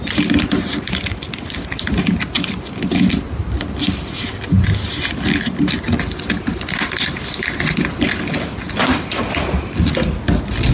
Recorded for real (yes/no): yes